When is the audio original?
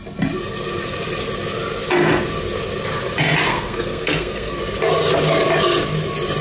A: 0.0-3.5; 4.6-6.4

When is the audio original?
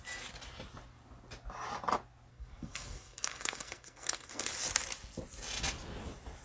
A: 0.0-2.3; 4.5-6.4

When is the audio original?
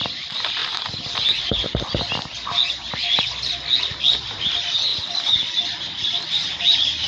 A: 0.0-7.1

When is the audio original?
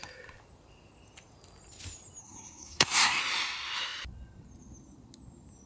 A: 0.0-2.2; 3.2-5.7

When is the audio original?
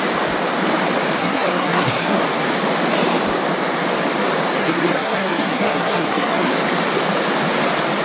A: 0.0-1.2; 2.2-4.6; 6.5-8.0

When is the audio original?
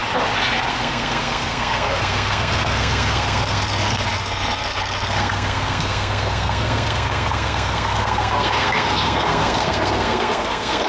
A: 0.0-0.7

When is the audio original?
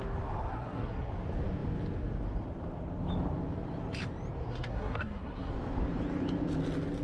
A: 0.0-0.5; 1.1-4.5; 5.5-7.0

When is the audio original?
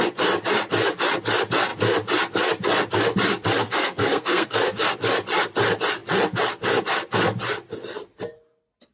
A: 0.0-3.6; 4.9-8.9